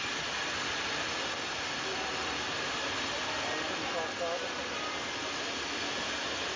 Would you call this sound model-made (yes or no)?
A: no